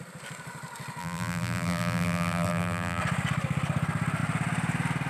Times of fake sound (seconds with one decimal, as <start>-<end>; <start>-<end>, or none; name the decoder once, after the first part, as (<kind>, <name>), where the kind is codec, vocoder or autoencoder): 1.0-3.0 (vocoder, BigVGAN v2)